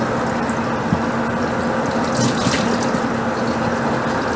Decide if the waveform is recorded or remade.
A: recorded